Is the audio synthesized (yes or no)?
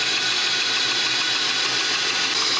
no